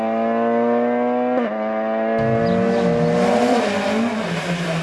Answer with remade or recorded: recorded